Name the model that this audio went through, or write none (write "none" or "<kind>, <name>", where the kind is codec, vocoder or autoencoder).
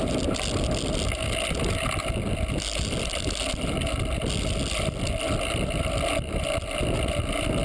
none